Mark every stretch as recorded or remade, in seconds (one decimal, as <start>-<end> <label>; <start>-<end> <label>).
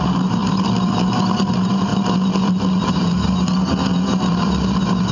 0.0-0.4 remade; 0.4-1.1 recorded; 1.1-1.9 remade; 1.9-2.8 recorded; 2.8-3.9 remade; 3.9-5.1 recorded